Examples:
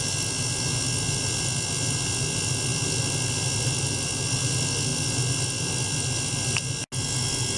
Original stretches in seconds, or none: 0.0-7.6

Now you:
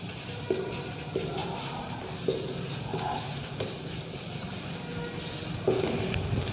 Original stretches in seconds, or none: 0.0-6.5

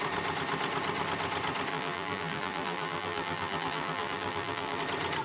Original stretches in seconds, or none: 0.0-1.7; 4.8-5.2

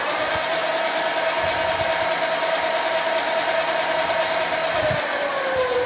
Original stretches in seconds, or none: 0.6-3.8; 4.6-5.5

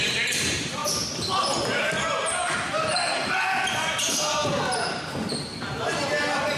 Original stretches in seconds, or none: 0.8-1.9; 4.4-5.0; 5.5-6.6

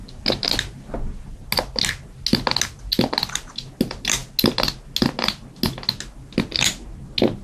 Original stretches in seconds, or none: 0.0-7.4

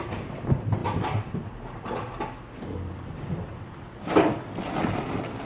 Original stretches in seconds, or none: 0.0-5.5